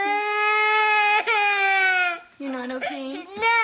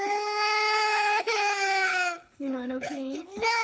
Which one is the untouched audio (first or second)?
first